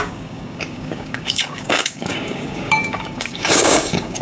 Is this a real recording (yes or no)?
no